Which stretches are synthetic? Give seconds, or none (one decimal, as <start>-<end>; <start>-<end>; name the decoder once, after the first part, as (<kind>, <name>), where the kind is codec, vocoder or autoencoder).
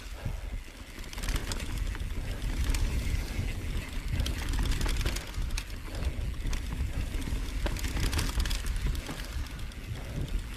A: none